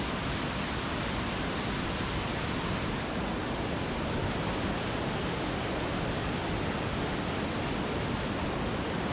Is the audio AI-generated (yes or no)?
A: no